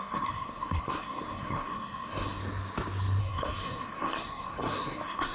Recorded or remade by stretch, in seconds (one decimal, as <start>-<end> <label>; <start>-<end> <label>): 0.0-2.4 remade; 2.4-3.2 recorded; 3.2-5.3 remade